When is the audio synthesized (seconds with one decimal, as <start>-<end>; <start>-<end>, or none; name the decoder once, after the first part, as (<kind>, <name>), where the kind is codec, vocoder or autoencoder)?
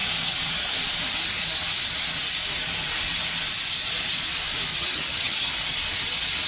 4.7-5.5 (vocoder, HiFi-GAN)